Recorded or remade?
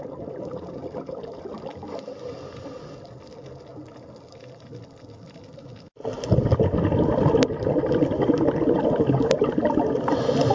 recorded